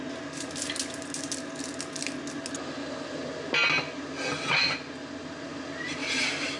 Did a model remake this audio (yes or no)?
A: no